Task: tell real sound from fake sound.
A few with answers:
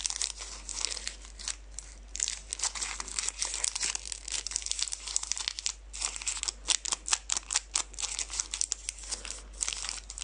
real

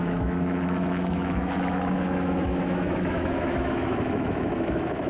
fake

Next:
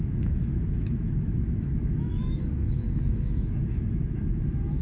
fake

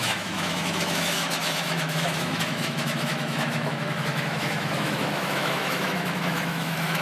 fake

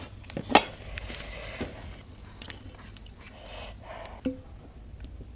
real